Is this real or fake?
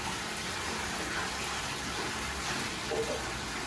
real